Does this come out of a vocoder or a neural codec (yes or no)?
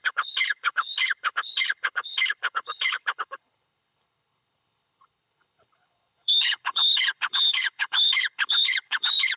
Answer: yes